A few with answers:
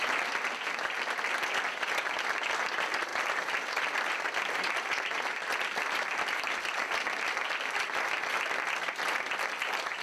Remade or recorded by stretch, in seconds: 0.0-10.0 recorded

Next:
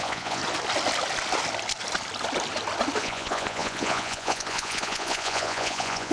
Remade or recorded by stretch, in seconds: 0.0-0.4 remade; 0.4-3.0 recorded; 3.0-6.1 remade

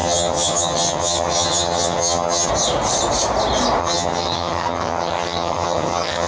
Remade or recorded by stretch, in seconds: 0.0-2.5 remade; 2.5-3.8 recorded; 3.8-6.3 remade

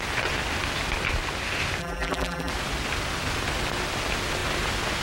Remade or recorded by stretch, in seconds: 0.0-1.8 recorded; 1.8-2.5 remade; 2.5-5.0 recorded

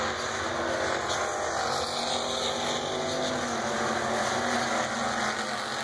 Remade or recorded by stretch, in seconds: 0.0-5.8 recorded

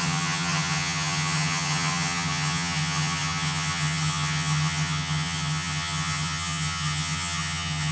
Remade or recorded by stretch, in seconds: 0.0-7.9 remade